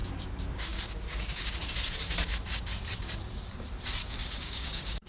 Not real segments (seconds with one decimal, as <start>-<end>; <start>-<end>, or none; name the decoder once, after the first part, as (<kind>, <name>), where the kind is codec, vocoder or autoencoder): 0.0-1.6 (codec, DAC); 4.0-5.1